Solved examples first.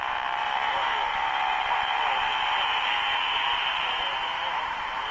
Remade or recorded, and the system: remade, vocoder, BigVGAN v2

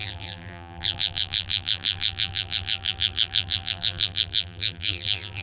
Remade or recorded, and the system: remade, vocoder, BigVGAN v2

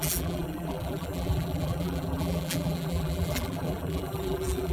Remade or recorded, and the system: remade, vocoder, BigVGAN v2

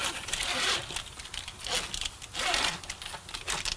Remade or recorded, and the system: recorded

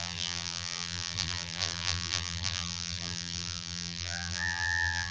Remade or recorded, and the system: remade, vocoder, BigVGAN v2